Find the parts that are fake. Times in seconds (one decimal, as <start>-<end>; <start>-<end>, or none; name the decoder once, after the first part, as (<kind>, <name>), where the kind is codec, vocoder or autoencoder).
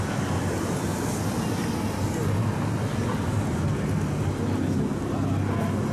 none